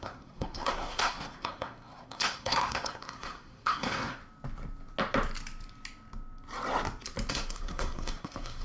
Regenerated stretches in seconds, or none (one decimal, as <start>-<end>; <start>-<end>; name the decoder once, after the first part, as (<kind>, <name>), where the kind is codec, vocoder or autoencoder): 0.0-4.2 (codec, SNAC); 7.3-8.6